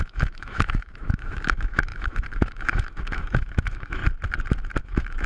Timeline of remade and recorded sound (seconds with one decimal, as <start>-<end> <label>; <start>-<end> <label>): 0.0-4.0 remade; 4.0-4.8 recorded; 4.8-5.3 remade